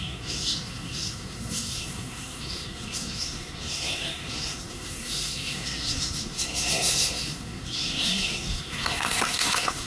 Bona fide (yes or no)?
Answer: no